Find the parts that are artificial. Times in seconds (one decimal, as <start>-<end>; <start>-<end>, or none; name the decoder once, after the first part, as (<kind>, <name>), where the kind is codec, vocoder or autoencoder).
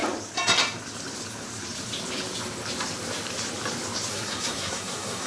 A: 4.1-5.3 (codec, SNAC)